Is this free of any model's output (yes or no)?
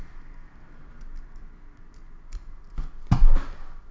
yes